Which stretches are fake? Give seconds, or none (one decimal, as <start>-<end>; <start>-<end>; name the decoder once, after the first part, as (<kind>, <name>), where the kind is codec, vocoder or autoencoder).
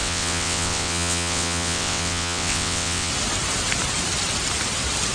0.0-3.1 (vocoder, WaveNeXt)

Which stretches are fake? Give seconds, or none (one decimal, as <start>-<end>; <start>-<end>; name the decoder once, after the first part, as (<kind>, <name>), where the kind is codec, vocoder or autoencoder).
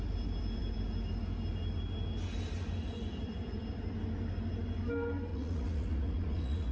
5.3-6.7 (vocoder, Vocos)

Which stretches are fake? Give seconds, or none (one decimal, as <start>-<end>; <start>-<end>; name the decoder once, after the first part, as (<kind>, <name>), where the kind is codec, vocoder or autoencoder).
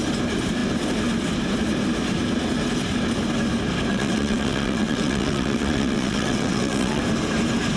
3.9-7.0 (vocoder, WaveNeXt)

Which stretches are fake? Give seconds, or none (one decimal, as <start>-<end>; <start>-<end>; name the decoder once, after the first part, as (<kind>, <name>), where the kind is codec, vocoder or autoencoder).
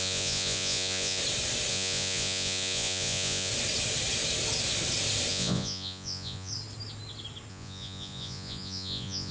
0.0-1.2 (vocoder, Vocos); 1.7-3.5; 5.3-6.5; 7.5-9.3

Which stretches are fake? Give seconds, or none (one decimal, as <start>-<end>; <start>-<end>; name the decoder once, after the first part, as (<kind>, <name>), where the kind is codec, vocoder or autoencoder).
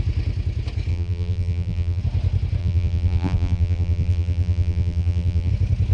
0.9-2.0 (vocoder, BigVGAN v2); 2.6-5.5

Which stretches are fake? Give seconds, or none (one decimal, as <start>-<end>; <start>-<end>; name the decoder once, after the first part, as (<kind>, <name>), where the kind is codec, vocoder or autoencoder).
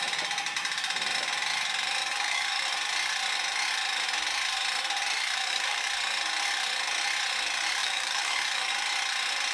2.0-2.6 (codec, DAC); 5.2-5.9; 7.8-8.7